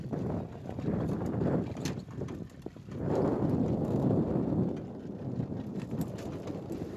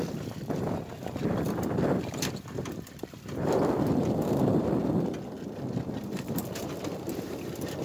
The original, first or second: first